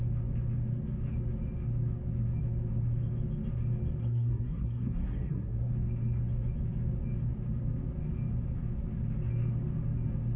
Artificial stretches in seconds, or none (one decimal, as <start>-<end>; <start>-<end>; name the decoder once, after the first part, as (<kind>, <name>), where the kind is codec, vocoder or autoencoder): 4.0-5.7 (codec, SNAC)